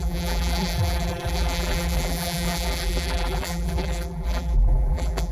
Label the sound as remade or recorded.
remade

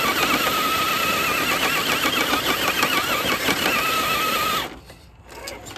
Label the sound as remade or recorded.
recorded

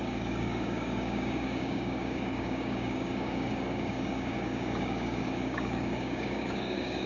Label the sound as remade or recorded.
remade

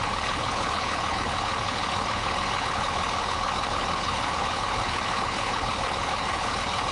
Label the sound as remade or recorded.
remade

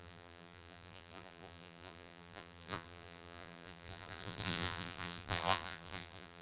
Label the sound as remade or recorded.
remade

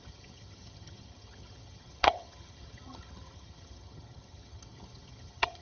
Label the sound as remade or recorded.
remade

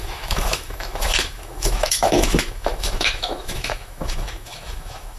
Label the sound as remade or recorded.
remade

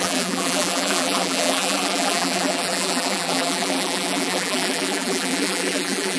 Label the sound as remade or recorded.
remade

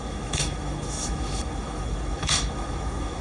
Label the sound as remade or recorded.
remade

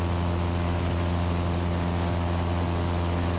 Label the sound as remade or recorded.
recorded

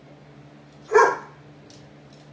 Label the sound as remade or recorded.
recorded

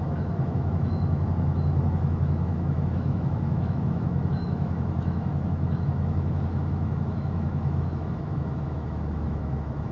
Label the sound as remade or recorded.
remade